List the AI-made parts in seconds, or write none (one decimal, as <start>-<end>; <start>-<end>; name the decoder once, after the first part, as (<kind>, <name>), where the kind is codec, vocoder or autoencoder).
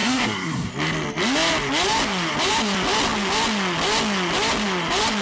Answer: 0.0-0.7 (codec, SNAC)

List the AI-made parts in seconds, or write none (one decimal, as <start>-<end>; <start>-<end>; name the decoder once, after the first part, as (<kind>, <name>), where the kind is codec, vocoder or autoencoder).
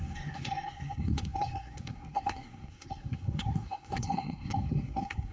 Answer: 0.0-5.3 (codec, SNAC)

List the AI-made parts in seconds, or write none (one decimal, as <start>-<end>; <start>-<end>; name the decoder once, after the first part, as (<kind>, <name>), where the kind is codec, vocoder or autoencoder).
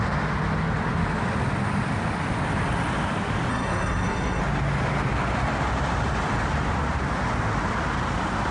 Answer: 3.5-4.4 (codec, SNAC)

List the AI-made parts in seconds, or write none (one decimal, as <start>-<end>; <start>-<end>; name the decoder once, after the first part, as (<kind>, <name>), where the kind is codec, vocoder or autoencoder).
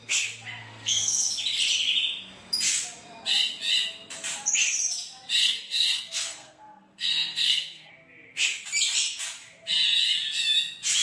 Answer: 0.6-1.3 (codec, SNAC); 5.4-7.9